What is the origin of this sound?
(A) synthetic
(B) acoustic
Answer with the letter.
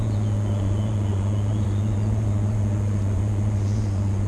A